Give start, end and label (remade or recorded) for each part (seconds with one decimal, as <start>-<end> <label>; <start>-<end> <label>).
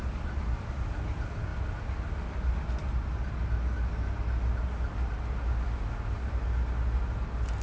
0.0-7.6 recorded